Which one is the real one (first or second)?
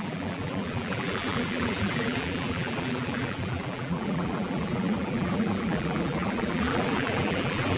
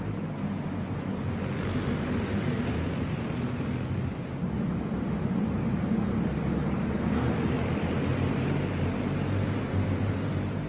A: second